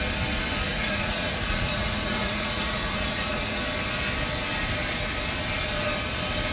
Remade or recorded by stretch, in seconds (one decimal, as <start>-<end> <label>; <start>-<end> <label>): 0.0-0.7 recorded; 0.7-3.6 remade; 3.6-6.5 recorded